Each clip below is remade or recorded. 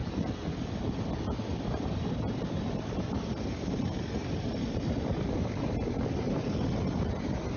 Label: recorded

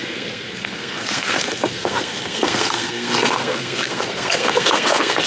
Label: remade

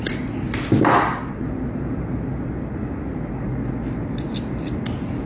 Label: recorded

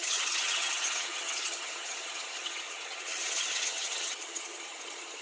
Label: remade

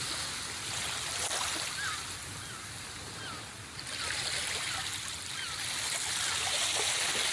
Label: recorded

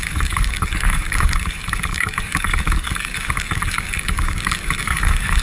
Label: remade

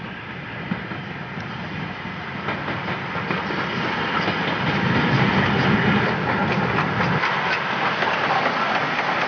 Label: recorded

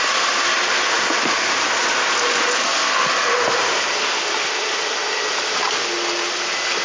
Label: recorded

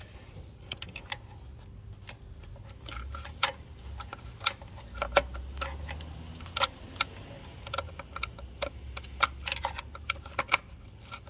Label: recorded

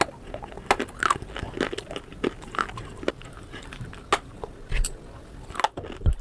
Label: recorded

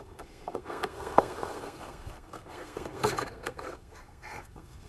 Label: remade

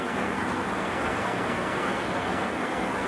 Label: remade